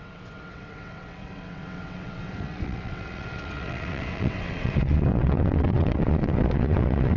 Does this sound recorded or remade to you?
remade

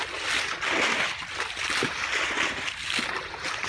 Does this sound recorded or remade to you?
recorded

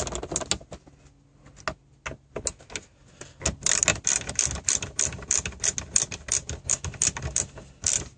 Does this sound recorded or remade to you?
recorded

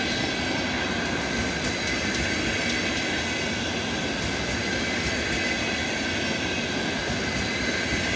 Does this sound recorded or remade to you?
recorded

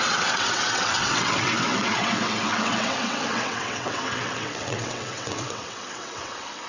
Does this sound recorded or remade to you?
remade